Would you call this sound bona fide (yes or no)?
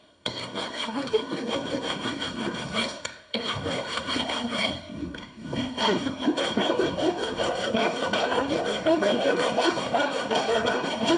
no